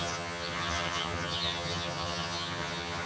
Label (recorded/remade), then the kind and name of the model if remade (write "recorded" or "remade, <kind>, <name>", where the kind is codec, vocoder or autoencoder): remade, vocoder, HiFi-GAN